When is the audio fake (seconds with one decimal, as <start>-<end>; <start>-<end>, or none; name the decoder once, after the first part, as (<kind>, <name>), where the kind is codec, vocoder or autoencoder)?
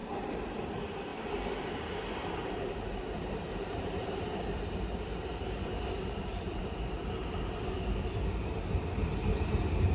0.0-0.6 (vocoder, BigVGAN v2); 1.1-4.4; 5.1-6.6